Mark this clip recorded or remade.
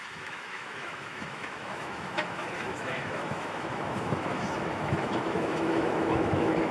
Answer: remade